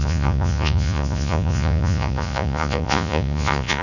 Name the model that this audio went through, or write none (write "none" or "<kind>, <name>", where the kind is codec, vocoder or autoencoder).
vocoder, Vocos